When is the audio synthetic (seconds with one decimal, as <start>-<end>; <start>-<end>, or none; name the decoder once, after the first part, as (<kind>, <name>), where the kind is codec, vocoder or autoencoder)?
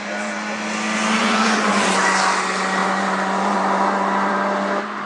1.2-2.0 (vocoder, Vocos)